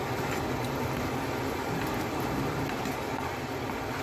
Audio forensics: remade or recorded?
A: recorded